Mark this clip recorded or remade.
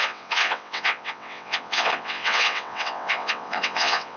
remade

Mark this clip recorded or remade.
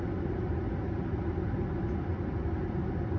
recorded